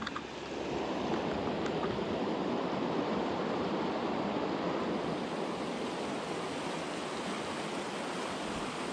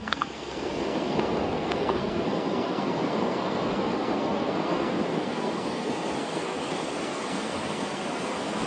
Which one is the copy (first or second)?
second